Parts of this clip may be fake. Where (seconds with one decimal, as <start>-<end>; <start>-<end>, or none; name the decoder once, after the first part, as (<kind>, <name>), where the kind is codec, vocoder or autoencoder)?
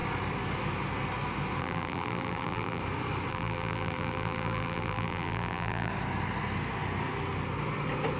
1.6-2.8 (vocoder, BigVGAN v2); 3.3-5.9